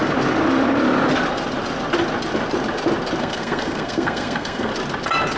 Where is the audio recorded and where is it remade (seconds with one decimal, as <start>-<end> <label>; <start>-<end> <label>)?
0.0-3.2 recorded; 3.2-4.7 remade; 4.7-5.4 recorded

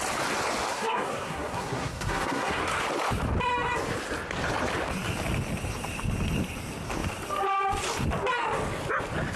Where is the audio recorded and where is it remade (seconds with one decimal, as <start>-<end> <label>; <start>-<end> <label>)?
0.0-0.7 recorded; 0.7-2.6 remade; 2.6-9.4 recorded

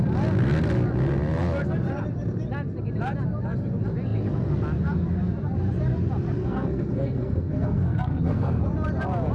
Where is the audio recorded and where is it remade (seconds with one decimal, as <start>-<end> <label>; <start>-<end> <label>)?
0.0-6.4 recorded; 6.4-8.6 remade; 8.6-9.3 recorded

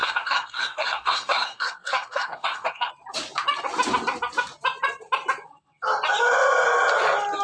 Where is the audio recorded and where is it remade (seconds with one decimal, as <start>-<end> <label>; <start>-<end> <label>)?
0.0-2.9 remade; 2.9-7.4 recorded

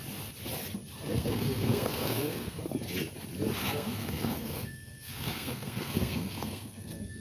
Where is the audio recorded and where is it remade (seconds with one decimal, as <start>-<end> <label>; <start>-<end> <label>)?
0.0-1.1 recorded; 1.1-2.6 remade; 2.6-3.6 recorded; 3.6-7.2 remade

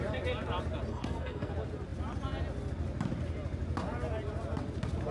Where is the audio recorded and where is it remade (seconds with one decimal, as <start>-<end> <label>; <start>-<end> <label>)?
0.0-0.9 recorded; 0.9-1.5 remade; 1.5-5.1 recorded

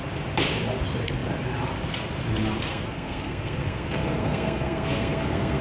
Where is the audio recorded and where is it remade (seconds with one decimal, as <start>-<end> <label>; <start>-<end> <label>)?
0.0-2.7 recorded; 2.7-5.6 remade

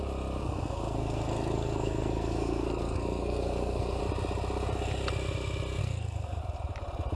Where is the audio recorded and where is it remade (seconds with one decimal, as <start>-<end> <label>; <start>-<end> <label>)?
0.0-0.4 recorded; 0.4-4.0 remade; 4.0-5.8 recorded; 5.8-6.4 remade; 6.4-7.1 recorded